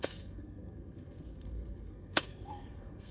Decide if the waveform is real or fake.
fake